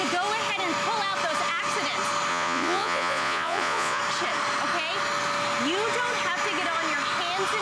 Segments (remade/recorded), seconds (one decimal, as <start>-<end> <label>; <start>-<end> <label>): 0.0-2.3 recorded; 2.3-4.0 remade; 4.0-7.6 recorded